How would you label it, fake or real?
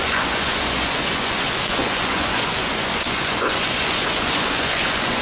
fake